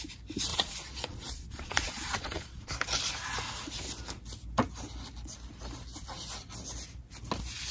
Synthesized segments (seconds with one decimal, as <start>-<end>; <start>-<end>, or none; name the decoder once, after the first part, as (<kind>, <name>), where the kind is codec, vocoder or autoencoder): 0.5-2.7 (vocoder, Vocos)